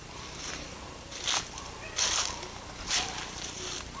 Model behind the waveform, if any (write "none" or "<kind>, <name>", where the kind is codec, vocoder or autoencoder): none